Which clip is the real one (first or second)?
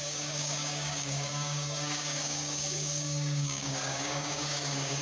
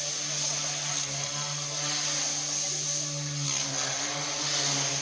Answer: second